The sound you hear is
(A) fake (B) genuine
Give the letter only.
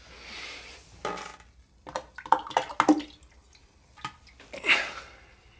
B